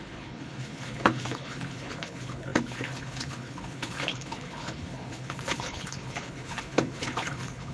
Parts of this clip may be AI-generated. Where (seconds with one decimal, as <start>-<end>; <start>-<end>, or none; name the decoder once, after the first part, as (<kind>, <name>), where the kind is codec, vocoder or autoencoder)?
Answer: 0.0-7.7 (codec, HILCodec)